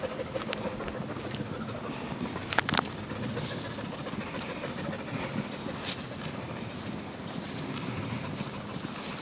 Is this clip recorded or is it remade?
recorded